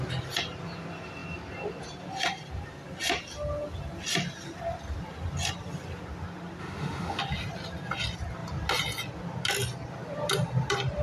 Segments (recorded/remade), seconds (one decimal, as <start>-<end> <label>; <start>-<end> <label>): 0.0-6.6 recorded; 6.6-7.2 remade; 7.2-11.0 recorded